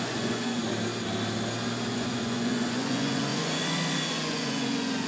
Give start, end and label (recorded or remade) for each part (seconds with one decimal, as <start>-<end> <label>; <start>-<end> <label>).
0.0-0.6 remade; 0.6-1.9 recorded; 1.9-5.1 remade